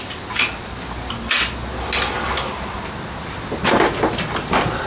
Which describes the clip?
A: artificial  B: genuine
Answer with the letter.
B